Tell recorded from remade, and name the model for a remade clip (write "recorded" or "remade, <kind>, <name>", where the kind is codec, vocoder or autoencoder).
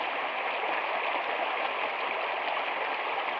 recorded